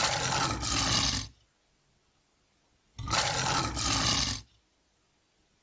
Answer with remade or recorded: recorded